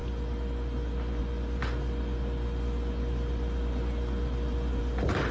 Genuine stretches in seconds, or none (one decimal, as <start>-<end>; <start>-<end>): 0.0-5.3